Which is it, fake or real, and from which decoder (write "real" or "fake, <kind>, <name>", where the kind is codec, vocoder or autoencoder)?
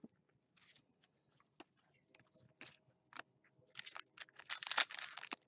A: real